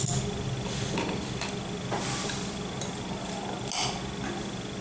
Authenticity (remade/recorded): recorded